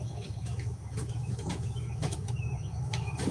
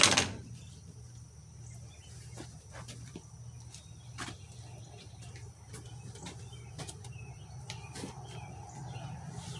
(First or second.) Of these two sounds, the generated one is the first